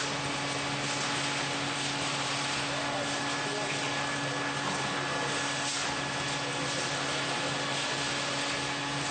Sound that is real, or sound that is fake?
real